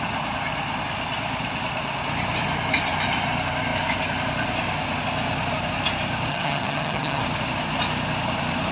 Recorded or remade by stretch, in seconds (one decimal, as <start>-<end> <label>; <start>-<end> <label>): 0.0-6.3 recorded; 6.3-7.2 remade; 7.2-8.7 recorded